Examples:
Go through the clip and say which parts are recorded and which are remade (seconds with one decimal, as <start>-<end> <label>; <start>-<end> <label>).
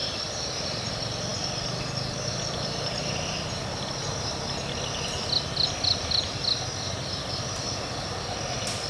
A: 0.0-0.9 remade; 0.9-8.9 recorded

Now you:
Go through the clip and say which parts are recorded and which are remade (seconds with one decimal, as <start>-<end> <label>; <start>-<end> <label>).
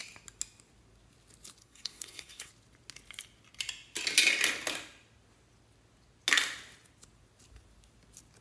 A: 0.0-1.6 recorded; 1.6-2.5 remade; 2.5-8.4 recorded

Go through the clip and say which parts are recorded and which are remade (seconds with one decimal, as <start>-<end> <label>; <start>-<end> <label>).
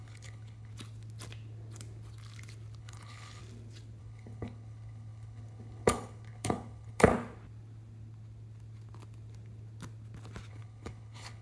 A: 0.0-0.7 remade; 0.7-2.8 recorded; 2.8-3.4 remade; 3.4-4.0 recorded; 4.0-7.1 remade; 7.1-10.5 recorded; 10.5-11.4 remade